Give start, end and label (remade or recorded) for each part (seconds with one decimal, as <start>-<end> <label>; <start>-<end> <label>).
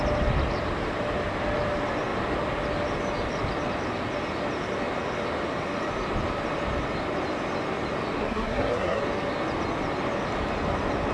0.0-8.2 recorded; 8.2-9.0 remade; 9.0-11.1 recorded